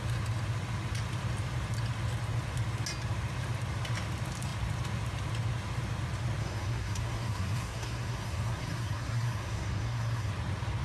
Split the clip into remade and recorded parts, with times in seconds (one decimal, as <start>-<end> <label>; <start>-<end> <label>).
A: 0.0-6.4 recorded; 6.4-10.3 remade; 10.3-10.8 recorded